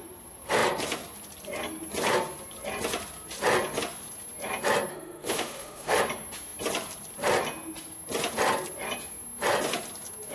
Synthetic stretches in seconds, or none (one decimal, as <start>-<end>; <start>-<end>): 4.9-6.0